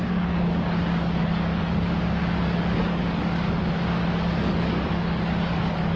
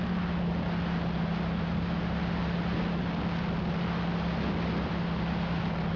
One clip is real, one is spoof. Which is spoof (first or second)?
first